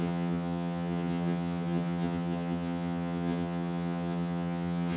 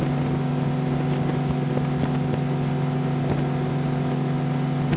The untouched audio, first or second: second